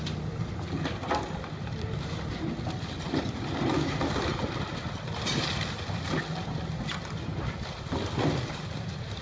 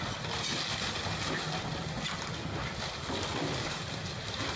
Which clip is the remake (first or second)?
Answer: first